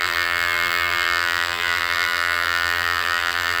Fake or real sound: fake